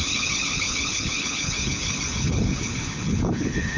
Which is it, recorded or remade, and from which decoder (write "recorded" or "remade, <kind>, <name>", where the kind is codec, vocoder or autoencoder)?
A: remade, codec, HILCodec